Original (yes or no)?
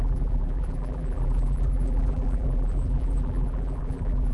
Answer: no